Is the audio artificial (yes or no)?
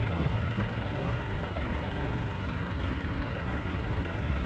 yes